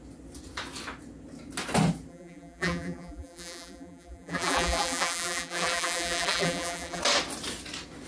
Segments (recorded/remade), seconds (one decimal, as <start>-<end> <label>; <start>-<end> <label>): 0.0-2.1 recorded; 2.1-7.0 remade; 7.0-8.1 recorded